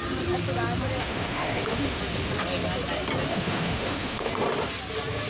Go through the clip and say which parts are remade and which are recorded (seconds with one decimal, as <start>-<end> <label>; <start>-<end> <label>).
0.0-1.0 recorded; 1.0-2.0 remade; 2.0-3.3 recorded; 3.3-4.3 remade; 4.3-5.3 recorded